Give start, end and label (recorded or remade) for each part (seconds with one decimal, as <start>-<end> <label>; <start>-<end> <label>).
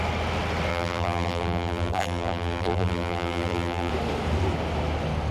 0.0-0.7 recorded; 0.7-3.9 remade; 3.9-5.3 recorded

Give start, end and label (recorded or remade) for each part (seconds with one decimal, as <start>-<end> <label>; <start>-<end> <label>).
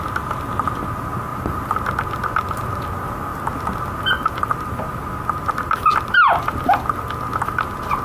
0.0-8.0 recorded